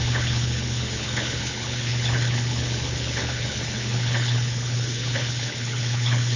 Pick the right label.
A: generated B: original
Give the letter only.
A